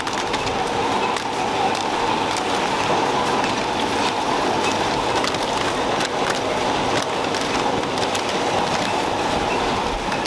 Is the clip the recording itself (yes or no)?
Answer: yes